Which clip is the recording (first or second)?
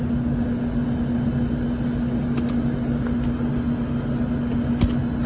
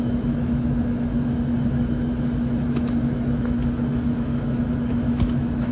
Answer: first